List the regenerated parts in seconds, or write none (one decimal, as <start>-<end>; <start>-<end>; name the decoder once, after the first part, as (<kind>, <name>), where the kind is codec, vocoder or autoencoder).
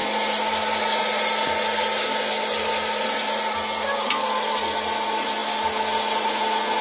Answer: none